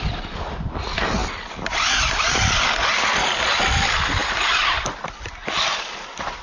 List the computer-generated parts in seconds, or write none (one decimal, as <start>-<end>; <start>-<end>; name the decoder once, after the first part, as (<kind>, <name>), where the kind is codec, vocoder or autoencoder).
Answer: none